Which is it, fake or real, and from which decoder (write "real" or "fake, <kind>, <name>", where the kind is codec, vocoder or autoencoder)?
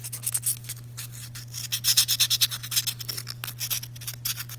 real